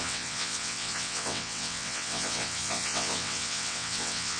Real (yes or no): no